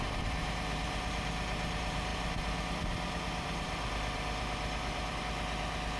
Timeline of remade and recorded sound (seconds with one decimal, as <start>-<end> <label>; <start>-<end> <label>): 0.0-2.1 recorded; 2.1-5.2 remade; 5.2-6.0 recorded